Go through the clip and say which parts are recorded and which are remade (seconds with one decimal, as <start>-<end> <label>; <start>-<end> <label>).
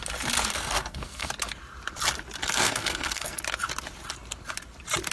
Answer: 0.0-0.5 recorded; 0.5-1.3 remade; 1.3-2.4 recorded; 2.4-3.4 remade; 3.4-5.1 recorded